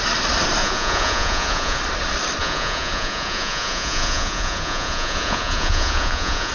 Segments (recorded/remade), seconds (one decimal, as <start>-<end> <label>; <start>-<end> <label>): 0.0-0.6 recorded; 0.6-1.8 remade; 1.8-2.4 recorded; 2.4-6.5 remade